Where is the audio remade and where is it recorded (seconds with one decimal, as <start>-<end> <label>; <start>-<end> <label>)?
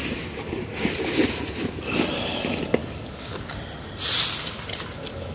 0.0-2.8 recorded; 2.8-3.5 remade; 3.5-5.3 recorded